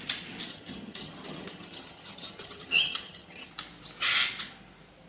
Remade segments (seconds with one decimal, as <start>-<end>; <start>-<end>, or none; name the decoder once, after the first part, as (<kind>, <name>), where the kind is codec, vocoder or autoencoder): 0.5-3.5 (vocoder, HiFi-GAN)